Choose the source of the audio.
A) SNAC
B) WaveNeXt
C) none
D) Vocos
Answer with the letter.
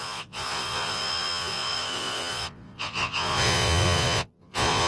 D